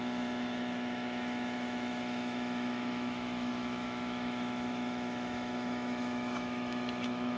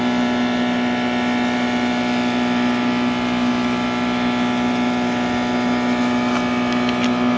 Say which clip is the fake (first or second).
first